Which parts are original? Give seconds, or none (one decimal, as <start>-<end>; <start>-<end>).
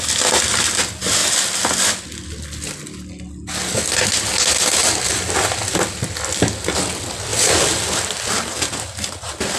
0.0-9.6